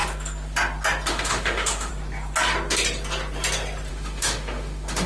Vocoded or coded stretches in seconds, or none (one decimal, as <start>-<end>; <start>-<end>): 1.1-1.9; 3.9-5.1